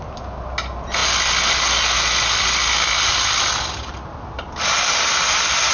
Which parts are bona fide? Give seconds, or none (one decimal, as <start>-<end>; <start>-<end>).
0.0-5.7